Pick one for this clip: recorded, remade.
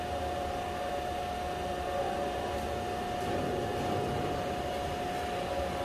recorded